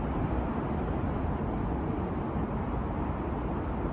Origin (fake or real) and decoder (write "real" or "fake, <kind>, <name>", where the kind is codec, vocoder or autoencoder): real